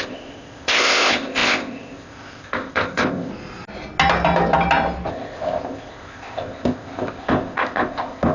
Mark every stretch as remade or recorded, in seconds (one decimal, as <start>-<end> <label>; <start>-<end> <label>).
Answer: 0.0-3.3 remade; 3.3-5.1 recorded; 5.1-8.3 remade

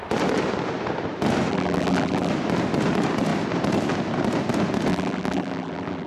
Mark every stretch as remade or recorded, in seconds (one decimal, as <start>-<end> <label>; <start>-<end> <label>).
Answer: 0.0-1.5 recorded; 1.5-2.3 remade; 2.3-4.9 recorded; 4.9-6.1 remade

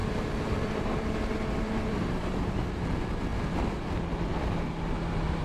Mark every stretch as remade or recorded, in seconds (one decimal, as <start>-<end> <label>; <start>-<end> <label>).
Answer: 0.0-2.6 remade; 2.6-5.4 recorded

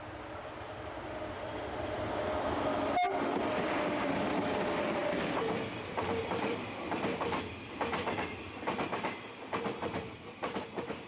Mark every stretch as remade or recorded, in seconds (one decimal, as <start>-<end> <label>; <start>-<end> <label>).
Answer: 0.0-5.0 recorded; 5.0-7.6 remade; 7.6-11.1 recorded

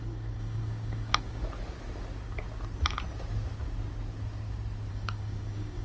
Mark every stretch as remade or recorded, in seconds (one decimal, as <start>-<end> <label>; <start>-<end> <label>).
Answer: 0.0-1.4 remade; 1.4-4.9 recorded; 4.9-5.8 remade

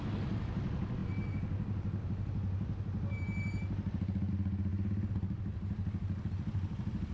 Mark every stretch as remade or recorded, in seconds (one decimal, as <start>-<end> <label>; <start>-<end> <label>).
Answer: 0.0-7.1 recorded

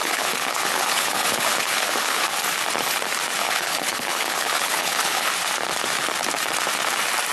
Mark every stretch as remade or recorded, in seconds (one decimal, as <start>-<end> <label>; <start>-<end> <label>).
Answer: 0.0-2.4 remade; 2.4-3.4 recorded; 3.4-5.3 remade; 5.3-7.3 recorded